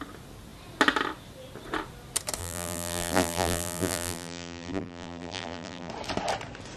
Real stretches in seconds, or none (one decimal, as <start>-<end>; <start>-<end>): 0.0-2.4; 5.9-6.8